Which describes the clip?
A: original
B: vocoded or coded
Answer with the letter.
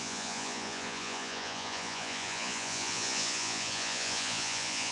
B